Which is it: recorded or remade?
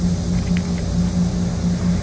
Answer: recorded